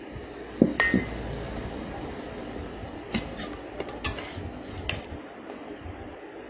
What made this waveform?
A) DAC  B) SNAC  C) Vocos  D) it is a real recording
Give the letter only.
D